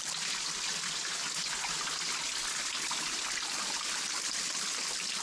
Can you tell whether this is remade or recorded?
recorded